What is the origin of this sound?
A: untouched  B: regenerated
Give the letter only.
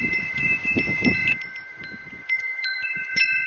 B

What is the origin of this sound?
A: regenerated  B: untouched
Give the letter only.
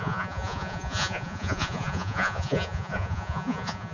A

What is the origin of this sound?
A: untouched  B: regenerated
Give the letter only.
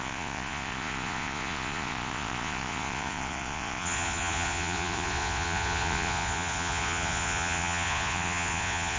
B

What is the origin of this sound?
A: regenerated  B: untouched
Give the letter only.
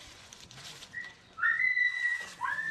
A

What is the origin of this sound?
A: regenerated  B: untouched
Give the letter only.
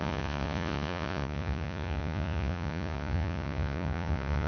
A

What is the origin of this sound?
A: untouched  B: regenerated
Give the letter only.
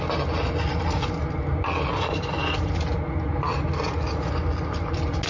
A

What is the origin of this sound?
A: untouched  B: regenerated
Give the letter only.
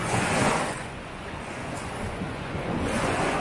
B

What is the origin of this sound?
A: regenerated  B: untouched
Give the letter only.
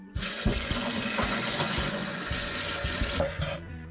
A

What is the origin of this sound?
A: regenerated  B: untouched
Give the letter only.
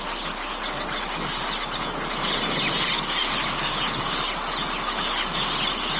B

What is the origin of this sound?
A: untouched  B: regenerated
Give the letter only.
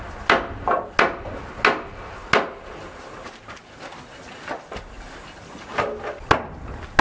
A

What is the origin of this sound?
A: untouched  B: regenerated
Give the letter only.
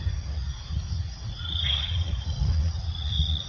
B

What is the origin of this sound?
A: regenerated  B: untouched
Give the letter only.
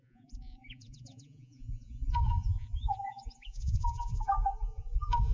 A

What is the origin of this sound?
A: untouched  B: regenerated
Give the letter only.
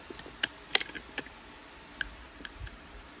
A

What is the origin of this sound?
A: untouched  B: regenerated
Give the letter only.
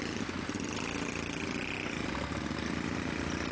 A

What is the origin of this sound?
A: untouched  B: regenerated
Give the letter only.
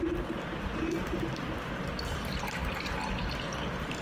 A